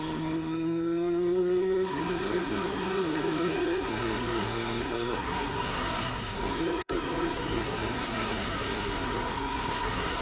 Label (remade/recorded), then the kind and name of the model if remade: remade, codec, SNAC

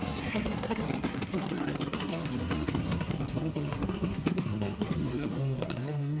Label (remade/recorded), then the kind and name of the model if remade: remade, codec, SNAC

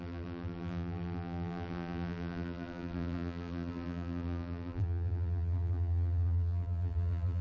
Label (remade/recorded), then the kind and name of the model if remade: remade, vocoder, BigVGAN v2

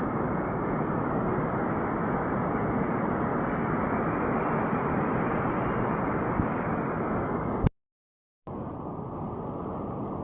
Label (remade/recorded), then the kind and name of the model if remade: recorded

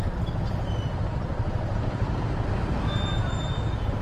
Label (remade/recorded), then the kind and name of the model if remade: recorded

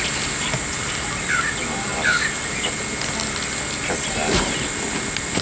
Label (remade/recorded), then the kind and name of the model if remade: recorded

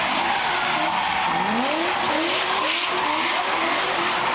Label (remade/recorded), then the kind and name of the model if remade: recorded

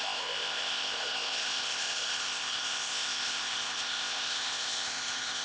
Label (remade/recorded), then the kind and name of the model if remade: remade, codec, ZipCodec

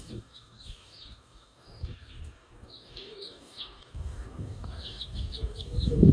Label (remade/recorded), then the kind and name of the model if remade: remade, codec, DAC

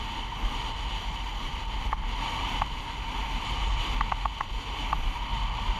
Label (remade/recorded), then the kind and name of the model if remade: recorded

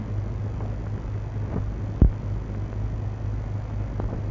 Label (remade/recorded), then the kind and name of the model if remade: recorded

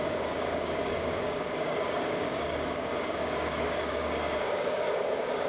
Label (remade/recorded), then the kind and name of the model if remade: remade, codec, DAC